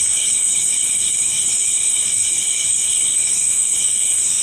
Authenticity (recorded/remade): remade